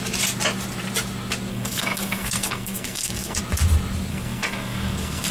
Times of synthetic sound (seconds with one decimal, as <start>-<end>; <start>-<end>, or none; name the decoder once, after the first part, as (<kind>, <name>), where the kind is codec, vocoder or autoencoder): 1.5-3.4 (codec, SNAC); 4.1-5.3